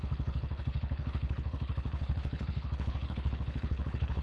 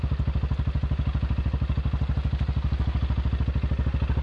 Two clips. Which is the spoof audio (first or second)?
first